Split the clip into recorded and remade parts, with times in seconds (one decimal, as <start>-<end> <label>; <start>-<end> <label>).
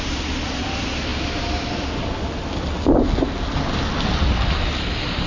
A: 0.0-5.3 recorded